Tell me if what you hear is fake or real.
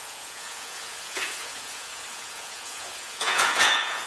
fake